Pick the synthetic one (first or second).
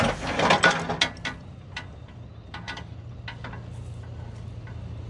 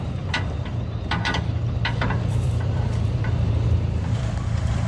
second